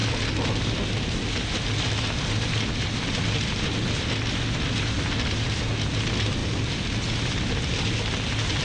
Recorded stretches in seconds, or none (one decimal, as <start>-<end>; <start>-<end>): 0.0-8.6